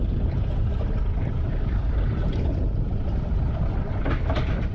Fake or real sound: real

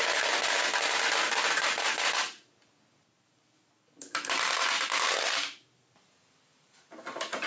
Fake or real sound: real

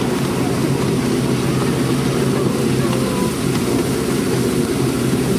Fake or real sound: real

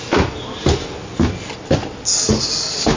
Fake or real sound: real